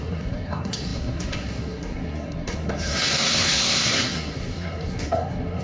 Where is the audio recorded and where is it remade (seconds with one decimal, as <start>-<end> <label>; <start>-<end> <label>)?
0.0-5.6 remade